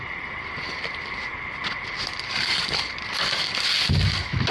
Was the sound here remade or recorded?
recorded